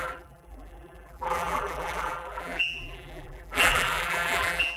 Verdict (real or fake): fake